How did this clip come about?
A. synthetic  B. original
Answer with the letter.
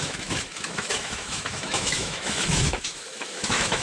A